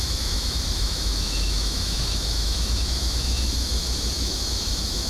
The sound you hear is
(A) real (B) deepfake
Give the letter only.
B